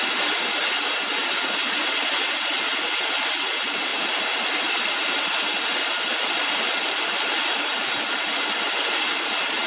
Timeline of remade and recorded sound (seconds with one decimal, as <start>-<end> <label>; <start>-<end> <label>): 0.0-9.7 recorded